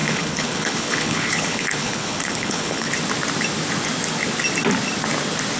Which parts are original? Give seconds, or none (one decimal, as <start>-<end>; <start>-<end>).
2.9-5.6